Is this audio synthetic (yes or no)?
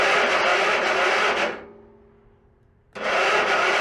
no